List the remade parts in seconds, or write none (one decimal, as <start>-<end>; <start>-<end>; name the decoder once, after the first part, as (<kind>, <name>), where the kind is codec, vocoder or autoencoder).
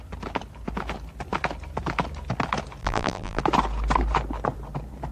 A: 2.8-3.4 (vocoder, BigVGAN v2)